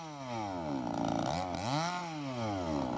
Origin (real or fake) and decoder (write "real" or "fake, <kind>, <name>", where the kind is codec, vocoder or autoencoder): real